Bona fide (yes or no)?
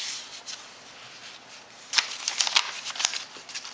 yes